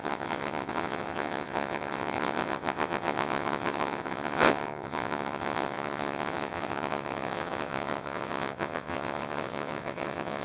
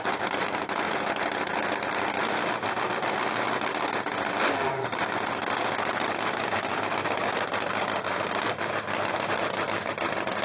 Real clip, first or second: second